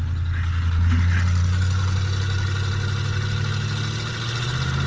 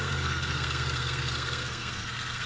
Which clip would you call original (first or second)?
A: first